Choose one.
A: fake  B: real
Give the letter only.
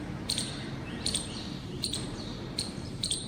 A